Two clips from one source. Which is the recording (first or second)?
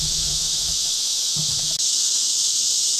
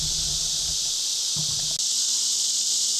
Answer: second